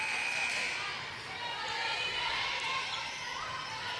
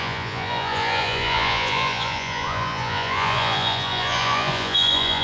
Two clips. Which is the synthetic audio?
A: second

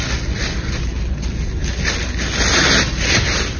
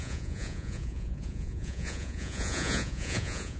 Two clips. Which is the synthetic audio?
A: second